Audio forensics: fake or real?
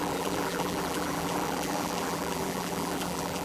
fake